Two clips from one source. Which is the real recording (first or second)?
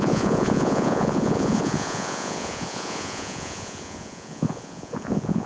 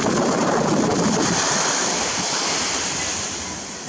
second